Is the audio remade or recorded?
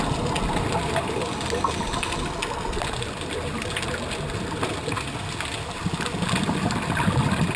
recorded